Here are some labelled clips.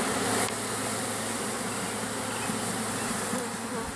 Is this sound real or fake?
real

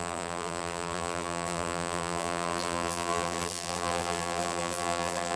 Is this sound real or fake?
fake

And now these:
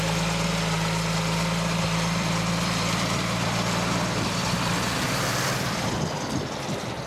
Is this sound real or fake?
fake